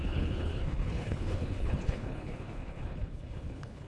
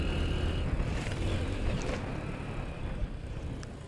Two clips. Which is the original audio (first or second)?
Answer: second